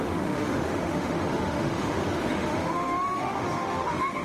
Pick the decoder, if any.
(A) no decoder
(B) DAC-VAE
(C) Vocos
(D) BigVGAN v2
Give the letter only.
B